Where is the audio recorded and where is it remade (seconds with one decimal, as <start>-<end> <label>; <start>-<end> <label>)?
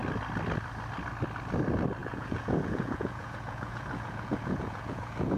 0.0-2.0 recorded; 2.0-5.4 remade